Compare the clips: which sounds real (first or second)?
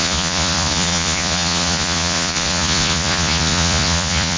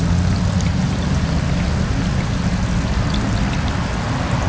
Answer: second